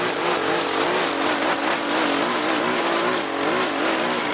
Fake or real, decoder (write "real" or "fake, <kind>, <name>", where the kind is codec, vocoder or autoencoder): real